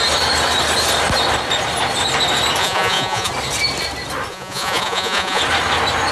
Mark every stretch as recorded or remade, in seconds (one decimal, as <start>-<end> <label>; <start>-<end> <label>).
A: 0.0-2.6 recorded; 2.6-3.3 remade; 3.3-4.3 recorded; 4.3-5.4 remade; 5.4-6.1 recorded